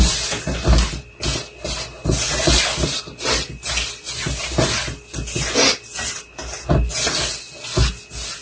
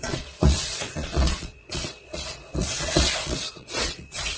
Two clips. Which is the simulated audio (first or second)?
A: second